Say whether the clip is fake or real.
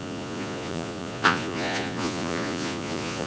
fake